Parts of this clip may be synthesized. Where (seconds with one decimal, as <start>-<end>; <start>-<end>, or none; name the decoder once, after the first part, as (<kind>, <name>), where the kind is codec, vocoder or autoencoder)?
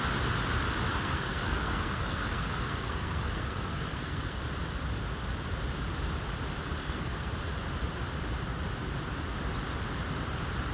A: 0.9-4.4 (codec, SNAC); 6.8-7.3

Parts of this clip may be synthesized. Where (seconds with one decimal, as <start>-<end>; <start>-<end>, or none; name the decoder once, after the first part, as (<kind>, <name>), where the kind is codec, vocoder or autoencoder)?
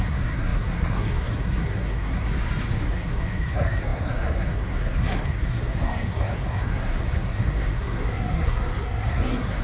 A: 0.0-2.3 (codec, SNAC); 2.9-9.6